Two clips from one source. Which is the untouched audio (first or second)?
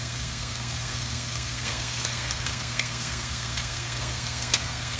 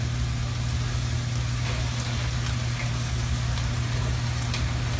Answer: second